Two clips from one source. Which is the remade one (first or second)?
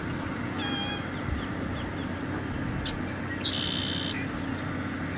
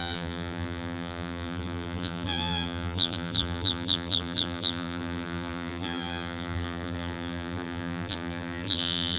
second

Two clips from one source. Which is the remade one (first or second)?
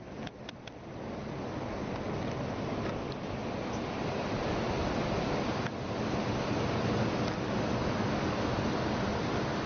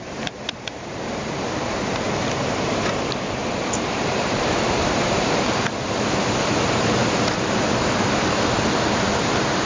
second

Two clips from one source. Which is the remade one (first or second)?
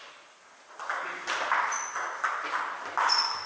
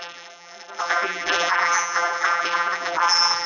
second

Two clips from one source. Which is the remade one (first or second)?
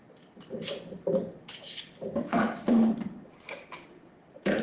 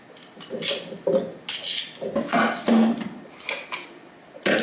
first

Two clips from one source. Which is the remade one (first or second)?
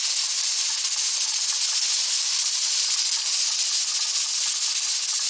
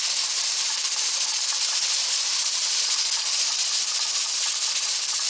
second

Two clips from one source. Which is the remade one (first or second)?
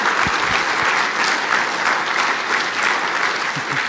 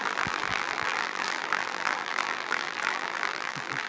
second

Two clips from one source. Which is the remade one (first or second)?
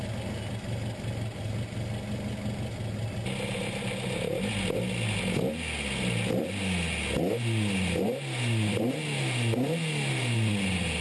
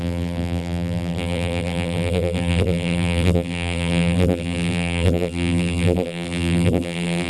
second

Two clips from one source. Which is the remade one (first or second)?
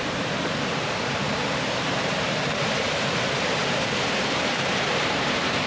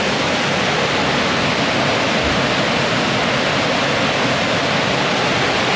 first